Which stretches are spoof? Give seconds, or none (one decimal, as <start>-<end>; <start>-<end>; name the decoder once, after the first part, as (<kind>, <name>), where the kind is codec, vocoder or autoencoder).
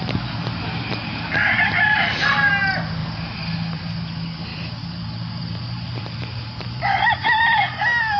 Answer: 1.0-2.5 (vocoder, BigVGAN v2); 4.5-6.8